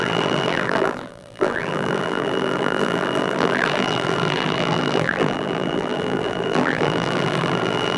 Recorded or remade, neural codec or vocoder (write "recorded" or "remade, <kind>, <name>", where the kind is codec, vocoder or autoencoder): remade, vocoder, BigVGAN v2